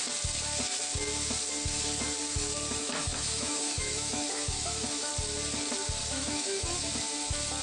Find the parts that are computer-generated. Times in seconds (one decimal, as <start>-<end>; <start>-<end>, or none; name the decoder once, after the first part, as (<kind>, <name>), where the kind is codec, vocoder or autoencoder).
2.8-5.1 (autoencoder, DAC-VAE); 6.0-6.9